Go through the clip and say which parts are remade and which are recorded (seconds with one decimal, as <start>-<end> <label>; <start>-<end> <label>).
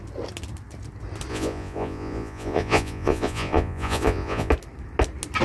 0.0-1.3 recorded; 1.3-4.5 remade; 4.5-5.4 recorded